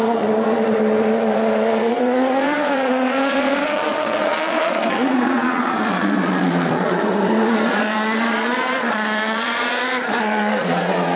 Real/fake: fake